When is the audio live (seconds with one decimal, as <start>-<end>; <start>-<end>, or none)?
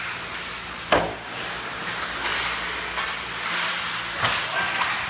0.0-5.1